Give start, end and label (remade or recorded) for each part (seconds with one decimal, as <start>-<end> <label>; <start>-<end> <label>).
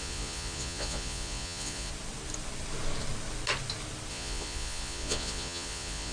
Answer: 0.0-1.9 remade; 1.9-4.1 recorded; 4.1-6.1 remade